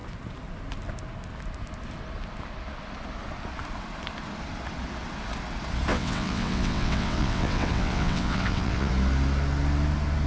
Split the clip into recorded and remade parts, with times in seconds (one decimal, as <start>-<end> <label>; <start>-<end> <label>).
0.0-5.9 recorded; 5.9-8.9 remade; 8.9-10.3 recorded